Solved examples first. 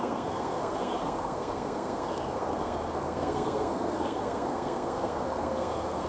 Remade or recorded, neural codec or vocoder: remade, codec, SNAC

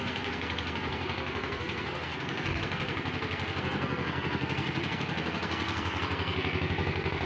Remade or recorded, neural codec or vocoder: remade, codec, SNAC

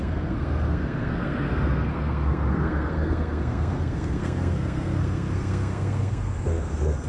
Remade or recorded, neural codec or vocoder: remade, codec, SNAC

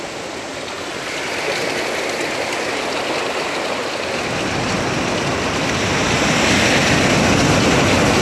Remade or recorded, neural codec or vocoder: recorded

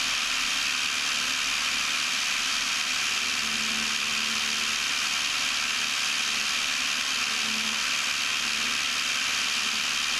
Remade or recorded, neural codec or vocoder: recorded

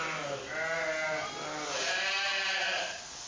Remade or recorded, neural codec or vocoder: recorded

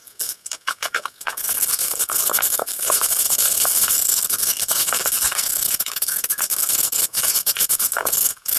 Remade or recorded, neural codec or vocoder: remade, codec, SNAC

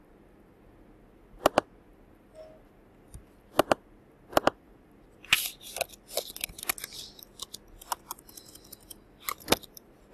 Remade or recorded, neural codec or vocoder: recorded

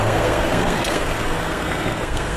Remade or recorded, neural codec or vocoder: remade, codec, SNAC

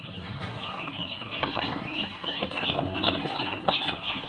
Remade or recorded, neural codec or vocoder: remade, codec, SNAC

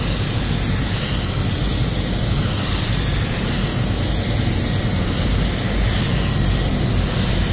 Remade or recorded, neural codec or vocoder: recorded